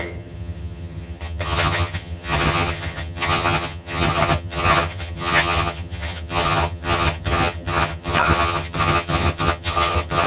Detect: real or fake fake